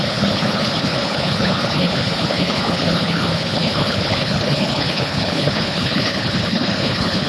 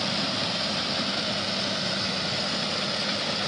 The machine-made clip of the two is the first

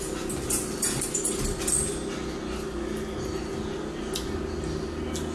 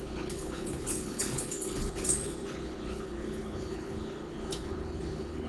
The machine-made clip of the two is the second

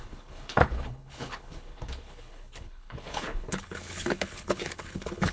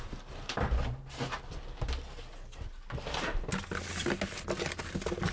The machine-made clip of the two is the first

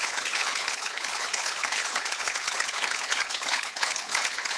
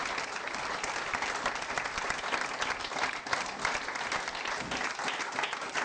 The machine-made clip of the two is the first